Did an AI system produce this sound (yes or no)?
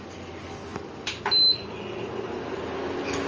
no